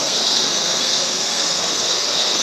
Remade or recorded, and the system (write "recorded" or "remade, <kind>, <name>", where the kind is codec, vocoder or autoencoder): remade, codec, SNAC